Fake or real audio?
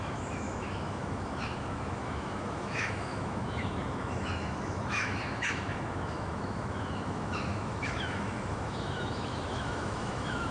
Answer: fake